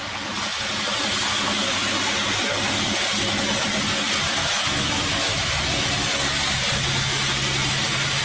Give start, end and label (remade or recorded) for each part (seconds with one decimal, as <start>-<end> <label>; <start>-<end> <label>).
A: 0.0-4.4 recorded; 4.4-5.6 remade; 5.6-8.2 recorded